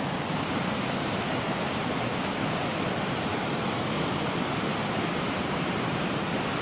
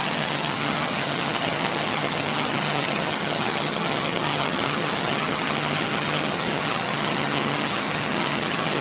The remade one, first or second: second